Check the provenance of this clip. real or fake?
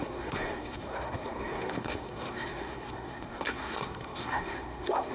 fake